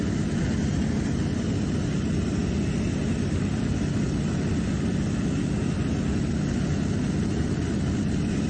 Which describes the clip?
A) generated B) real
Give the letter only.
B